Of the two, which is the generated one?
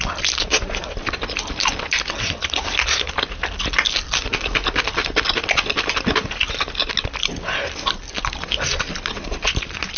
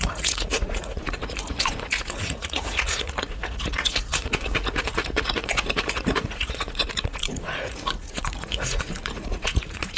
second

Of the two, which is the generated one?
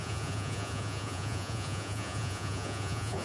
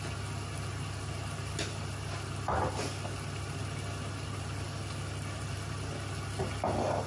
first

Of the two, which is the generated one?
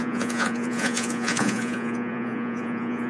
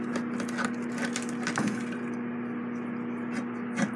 first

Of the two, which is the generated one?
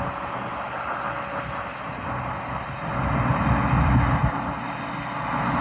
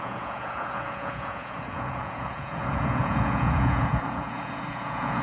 second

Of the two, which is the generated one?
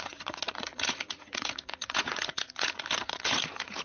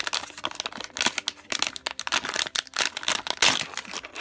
first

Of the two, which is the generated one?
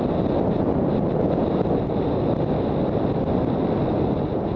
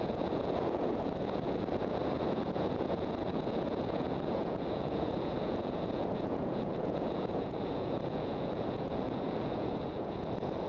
second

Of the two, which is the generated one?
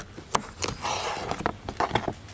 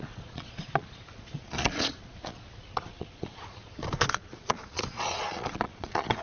second